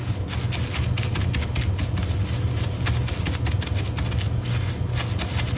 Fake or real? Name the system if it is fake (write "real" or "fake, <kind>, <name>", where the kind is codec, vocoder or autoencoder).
real